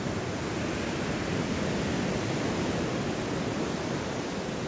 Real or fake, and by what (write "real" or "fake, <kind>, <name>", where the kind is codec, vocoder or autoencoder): real